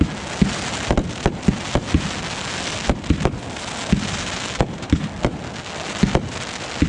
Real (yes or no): yes